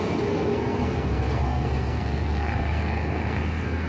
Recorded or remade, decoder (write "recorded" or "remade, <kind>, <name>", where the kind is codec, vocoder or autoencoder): remade, codec, SNAC